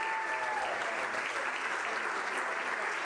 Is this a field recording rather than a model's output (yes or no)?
yes